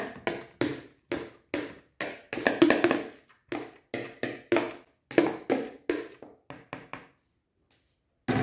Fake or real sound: real